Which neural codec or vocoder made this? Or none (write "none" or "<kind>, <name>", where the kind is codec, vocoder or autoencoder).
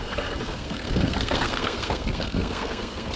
codec, SNAC